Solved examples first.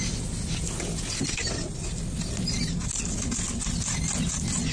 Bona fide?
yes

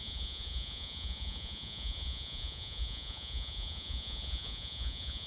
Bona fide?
no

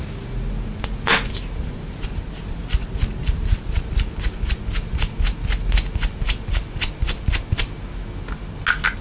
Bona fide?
yes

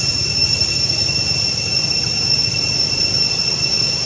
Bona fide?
yes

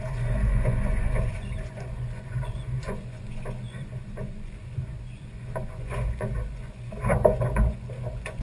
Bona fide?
no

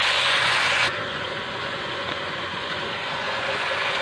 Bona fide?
no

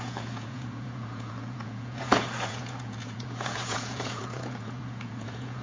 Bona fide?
no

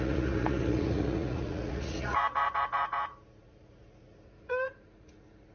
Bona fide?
no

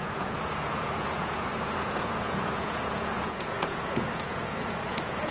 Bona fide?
no